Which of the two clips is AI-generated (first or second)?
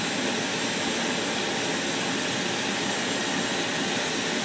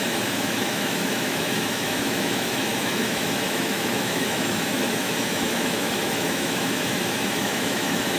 second